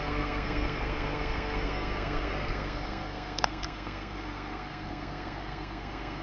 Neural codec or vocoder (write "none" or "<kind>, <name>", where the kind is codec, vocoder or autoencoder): codec, SNAC